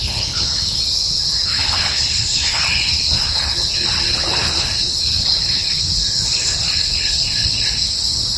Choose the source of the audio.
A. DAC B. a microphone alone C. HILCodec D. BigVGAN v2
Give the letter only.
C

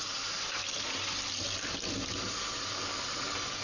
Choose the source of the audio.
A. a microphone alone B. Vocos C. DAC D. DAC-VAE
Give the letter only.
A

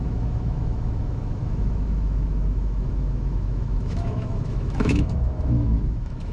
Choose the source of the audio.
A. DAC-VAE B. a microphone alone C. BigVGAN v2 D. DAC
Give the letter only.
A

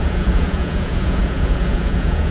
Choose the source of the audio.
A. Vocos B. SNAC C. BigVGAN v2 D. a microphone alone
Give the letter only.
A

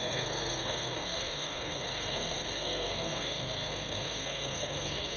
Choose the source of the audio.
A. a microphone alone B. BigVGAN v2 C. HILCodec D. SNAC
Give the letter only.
D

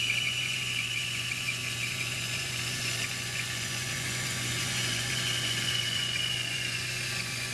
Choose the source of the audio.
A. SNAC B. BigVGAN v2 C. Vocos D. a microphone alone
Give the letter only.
C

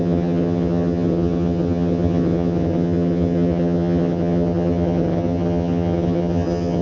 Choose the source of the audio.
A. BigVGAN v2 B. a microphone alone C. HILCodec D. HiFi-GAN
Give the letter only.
D